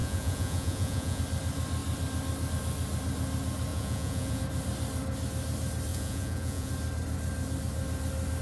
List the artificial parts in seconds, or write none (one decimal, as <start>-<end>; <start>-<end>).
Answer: 0.0-1.2; 3.7-4.4; 5.9-6.7